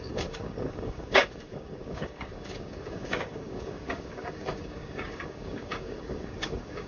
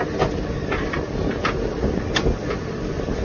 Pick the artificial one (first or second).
first